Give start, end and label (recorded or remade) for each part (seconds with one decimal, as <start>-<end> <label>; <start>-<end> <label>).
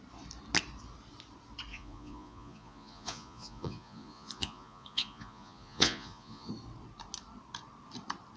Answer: 0.0-1.7 recorded; 1.7-6.5 remade; 6.5-8.4 recorded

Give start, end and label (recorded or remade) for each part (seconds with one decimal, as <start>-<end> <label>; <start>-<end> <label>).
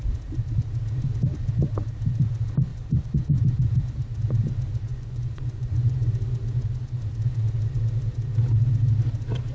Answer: 0.0-2.7 recorded; 2.7-3.4 remade; 3.4-4.9 recorded; 4.9-6.1 remade; 6.1-9.5 recorded